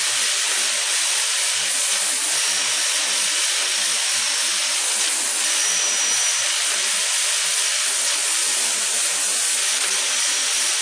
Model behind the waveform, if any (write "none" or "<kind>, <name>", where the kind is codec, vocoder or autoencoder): none